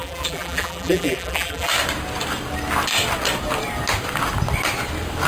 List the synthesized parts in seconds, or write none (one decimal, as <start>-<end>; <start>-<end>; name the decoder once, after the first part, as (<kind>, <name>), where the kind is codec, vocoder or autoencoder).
0.0-1.7 (vocoder, BigVGAN v2)